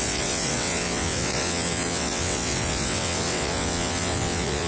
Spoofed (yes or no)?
yes